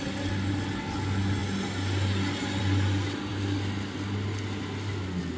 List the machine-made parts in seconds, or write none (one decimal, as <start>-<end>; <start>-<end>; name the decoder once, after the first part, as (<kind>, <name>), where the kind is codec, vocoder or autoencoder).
none